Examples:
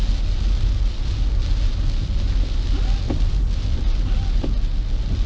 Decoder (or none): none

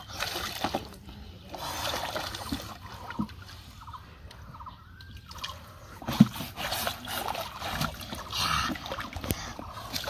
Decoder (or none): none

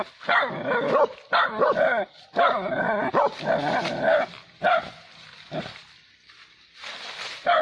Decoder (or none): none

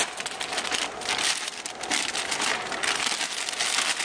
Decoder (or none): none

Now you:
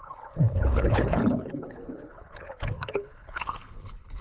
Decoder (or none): codec, HILCodec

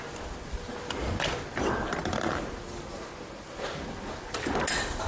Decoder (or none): none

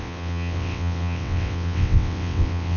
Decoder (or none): vocoder, WaveNeXt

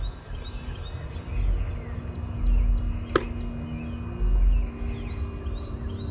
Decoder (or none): none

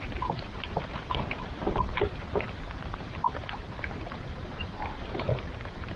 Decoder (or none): vocoder, BigVGAN v2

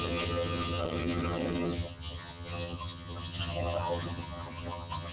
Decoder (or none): vocoder, HiFi-GAN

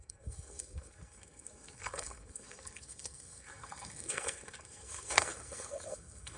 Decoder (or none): codec, SNAC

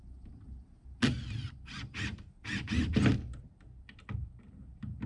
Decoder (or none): none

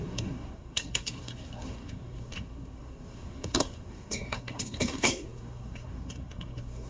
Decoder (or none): codec, SNAC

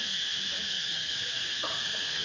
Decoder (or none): codec, SNAC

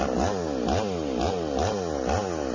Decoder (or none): none